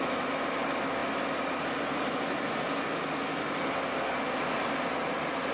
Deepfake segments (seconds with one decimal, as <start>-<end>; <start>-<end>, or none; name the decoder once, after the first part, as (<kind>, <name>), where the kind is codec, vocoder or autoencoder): none